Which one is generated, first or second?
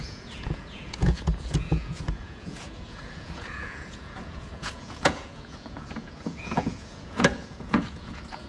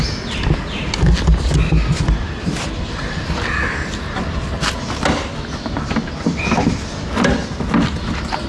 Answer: first